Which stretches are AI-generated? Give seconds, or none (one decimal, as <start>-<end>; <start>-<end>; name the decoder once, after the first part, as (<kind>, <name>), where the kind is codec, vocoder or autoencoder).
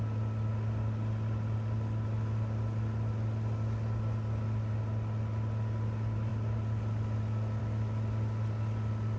none